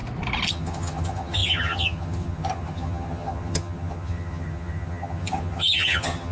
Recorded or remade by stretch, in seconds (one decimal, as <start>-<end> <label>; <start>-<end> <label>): 0.0-0.5 recorded; 0.5-6.3 remade

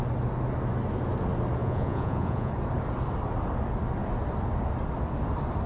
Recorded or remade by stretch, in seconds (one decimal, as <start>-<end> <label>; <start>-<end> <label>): 0.0-1.6 recorded; 1.6-2.5 remade; 2.5-5.7 recorded